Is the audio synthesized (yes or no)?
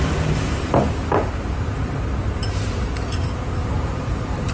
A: yes